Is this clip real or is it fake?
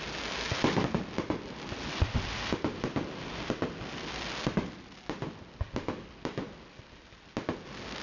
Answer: real